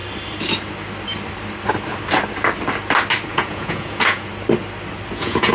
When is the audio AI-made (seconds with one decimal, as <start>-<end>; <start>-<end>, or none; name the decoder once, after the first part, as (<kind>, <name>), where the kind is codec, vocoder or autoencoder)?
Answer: 3.3-4.3 (vocoder, Vocos); 5.1-5.5